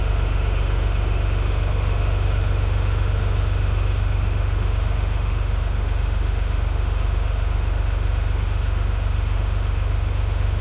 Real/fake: fake